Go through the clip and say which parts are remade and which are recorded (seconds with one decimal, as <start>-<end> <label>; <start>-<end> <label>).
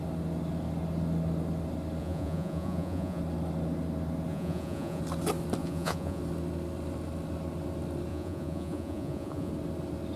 0.0-2.0 recorded; 2.0-3.2 remade; 3.2-4.3 recorded; 4.3-5.0 remade; 5.0-5.6 recorded; 5.6-6.2 remade; 6.2-8.1 recorded; 8.1-9.5 remade; 9.5-10.2 recorded